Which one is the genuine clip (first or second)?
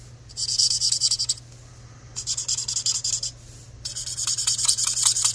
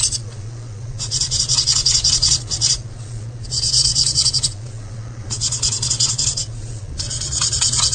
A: first